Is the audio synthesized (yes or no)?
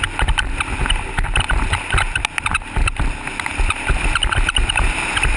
no